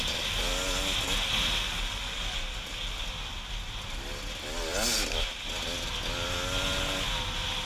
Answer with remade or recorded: recorded